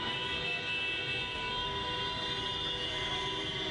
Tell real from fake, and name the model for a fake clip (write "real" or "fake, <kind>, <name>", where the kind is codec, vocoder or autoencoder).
real